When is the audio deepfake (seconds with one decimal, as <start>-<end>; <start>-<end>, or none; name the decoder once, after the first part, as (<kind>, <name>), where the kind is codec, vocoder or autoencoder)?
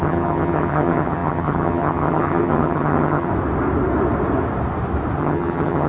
0.0-3.3 (vocoder, HiFi-GAN); 5.2-5.9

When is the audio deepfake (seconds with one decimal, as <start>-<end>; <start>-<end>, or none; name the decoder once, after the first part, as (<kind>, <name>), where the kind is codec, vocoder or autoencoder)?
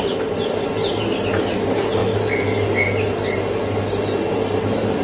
none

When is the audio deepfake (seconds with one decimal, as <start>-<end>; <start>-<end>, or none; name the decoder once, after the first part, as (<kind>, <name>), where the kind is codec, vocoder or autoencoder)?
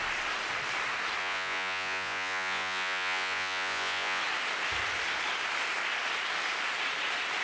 1.2-4.2 (vocoder, Vocos)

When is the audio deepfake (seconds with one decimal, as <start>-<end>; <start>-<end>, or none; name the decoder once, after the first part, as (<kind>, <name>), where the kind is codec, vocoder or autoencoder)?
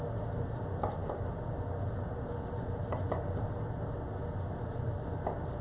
none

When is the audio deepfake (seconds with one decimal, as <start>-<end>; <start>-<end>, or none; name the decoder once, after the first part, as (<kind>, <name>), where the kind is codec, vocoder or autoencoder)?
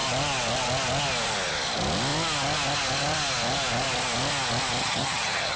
4.8-5.6 (vocoder, HiFi-GAN)